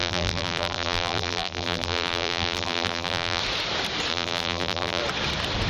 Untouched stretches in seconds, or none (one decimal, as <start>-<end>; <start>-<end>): 3.4-4.1; 5.0-5.7